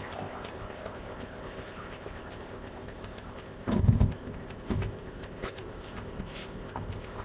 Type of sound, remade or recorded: remade